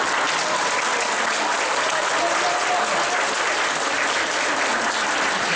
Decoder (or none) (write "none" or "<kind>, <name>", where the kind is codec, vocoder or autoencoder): none